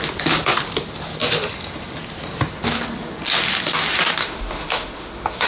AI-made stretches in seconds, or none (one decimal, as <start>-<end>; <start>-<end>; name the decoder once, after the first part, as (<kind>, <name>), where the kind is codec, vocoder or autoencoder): 4.2-5.5 (autoencoder, DAC-VAE)